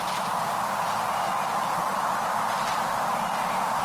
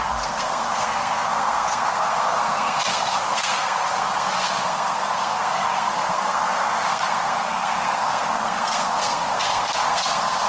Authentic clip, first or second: first